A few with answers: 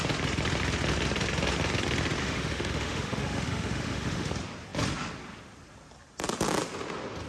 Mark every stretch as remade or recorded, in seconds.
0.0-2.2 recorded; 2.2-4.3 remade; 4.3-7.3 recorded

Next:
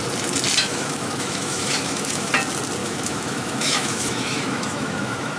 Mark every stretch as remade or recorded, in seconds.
0.0-0.6 recorded; 0.6-2.3 remade; 2.3-2.8 recorded; 2.8-5.4 remade

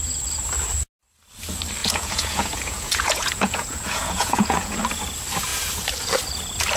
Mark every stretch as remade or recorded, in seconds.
0.0-1.8 recorded; 1.8-4.8 remade; 4.8-6.8 recorded

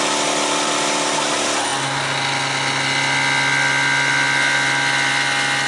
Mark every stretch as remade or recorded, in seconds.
0.0-5.7 recorded

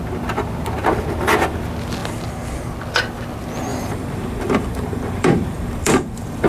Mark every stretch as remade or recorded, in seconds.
0.0-3.7 recorded; 3.7-6.5 remade

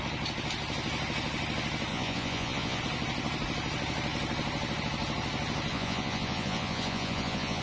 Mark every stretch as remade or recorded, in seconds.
0.0-1.9 recorded; 1.9-2.8 remade; 2.8-5.7 recorded; 5.7-7.6 remade

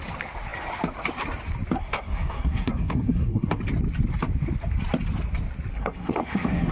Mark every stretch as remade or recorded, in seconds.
0.0-1.8 recorded; 1.8-3.6 remade; 3.6-5.7 recorded; 5.7-6.7 remade